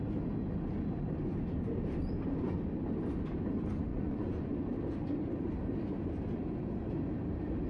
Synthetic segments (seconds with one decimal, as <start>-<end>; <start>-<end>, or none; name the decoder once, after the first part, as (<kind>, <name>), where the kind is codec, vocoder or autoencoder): 3.9-4.5 (vocoder, Vocos)